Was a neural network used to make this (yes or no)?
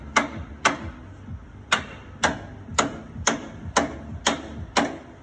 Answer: no